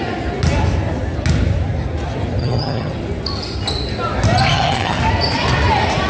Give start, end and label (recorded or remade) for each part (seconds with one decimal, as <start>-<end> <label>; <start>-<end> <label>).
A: 0.0-2.4 recorded; 2.4-2.9 remade; 2.9-4.5 recorded; 4.5-5.0 remade; 5.0-6.1 recorded

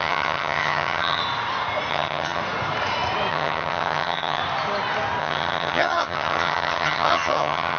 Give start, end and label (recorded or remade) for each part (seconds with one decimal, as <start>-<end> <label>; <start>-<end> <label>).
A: 0.0-1.2 remade; 1.2-1.9 recorded; 1.9-2.4 remade; 2.4-3.3 recorded; 3.3-4.4 remade; 4.4-5.2 recorded; 5.2-7.8 remade

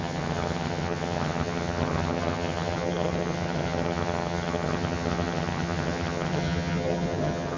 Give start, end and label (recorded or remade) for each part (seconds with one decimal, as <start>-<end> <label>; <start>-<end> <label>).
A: 0.0-7.6 remade

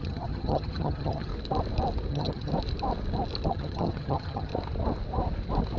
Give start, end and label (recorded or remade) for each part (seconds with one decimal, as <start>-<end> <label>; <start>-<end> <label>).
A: 0.0-1.3 remade; 1.3-2.1 recorded; 2.1-2.5 remade; 2.5-3.5 recorded; 3.5-4.5 remade; 4.5-5.8 recorded

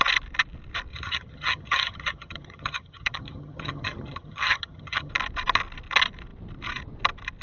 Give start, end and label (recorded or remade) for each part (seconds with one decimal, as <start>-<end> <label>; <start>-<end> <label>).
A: 0.0-0.9 recorded; 0.9-5.1 remade; 5.1-7.4 recorded

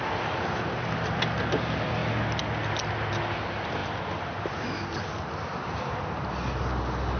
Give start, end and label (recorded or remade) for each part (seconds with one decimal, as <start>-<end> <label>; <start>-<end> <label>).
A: 0.0-7.2 recorded

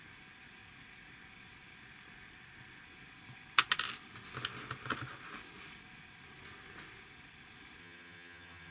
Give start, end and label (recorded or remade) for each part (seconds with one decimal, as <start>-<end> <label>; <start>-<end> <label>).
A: 0.0-7.8 recorded; 7.8-8.7 remade